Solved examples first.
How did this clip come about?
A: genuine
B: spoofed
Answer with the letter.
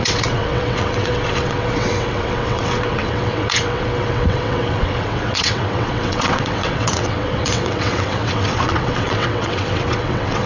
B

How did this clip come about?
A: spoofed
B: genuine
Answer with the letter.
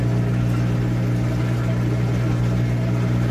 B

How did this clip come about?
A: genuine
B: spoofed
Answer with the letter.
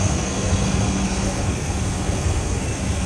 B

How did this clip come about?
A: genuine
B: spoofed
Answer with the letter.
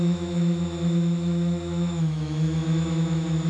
B